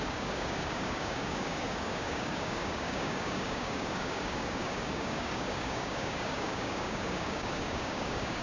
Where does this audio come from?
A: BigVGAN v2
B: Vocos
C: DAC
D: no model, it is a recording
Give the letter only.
C